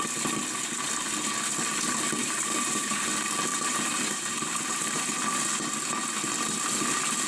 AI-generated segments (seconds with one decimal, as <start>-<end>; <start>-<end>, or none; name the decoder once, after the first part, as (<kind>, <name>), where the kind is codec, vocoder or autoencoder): 2.2-3.1 (vocoder, BigVGAN v2); 3.5-5.0